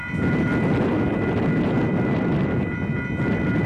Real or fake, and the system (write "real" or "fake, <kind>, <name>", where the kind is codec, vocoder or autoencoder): real